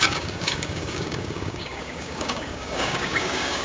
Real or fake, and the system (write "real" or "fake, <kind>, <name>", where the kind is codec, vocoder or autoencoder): fake, codec, DAC